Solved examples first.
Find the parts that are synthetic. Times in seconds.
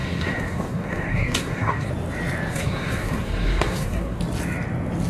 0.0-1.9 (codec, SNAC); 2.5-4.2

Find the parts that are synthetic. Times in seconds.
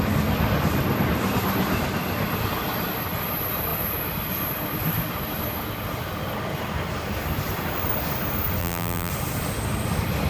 8.6-9.1 (vocoder, BigVGAN v2)